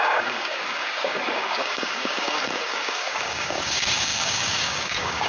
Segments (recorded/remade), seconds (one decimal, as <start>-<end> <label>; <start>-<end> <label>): 0.0-5.3 remade